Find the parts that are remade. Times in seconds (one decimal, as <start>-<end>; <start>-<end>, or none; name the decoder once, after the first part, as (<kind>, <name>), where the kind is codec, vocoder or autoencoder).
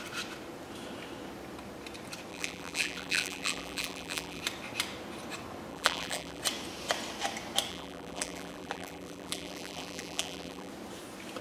2.3-4.4 (vocoder, BigVGAN v2); 5.7-6.4; 7.7-10.7